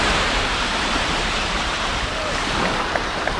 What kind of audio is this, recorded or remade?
remade